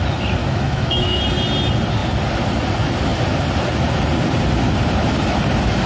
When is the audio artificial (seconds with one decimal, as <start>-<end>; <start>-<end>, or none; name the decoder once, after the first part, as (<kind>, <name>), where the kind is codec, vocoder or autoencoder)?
0.4-1.2 (autoencoder, DAC-VAE)